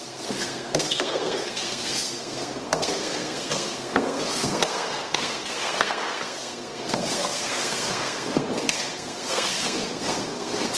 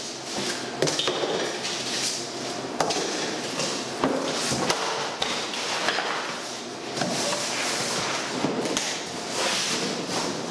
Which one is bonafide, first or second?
second